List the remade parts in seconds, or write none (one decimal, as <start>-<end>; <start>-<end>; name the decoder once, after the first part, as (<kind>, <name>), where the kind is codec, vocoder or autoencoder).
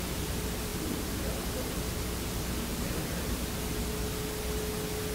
0.7-1.3 (vocoder, BigVGAN v2); 2.7-3.7